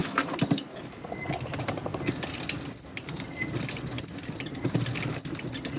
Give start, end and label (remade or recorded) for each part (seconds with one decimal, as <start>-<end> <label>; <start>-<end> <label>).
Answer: 0.0-0.6 recorded; 0.6-1.9 remade; 1.9-5.8 recorded